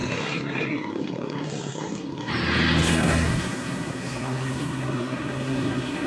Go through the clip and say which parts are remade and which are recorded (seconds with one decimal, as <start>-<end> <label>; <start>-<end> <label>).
0.0-2.3 remade; 2.3-2.8 recorded; 2.8-6.1 remade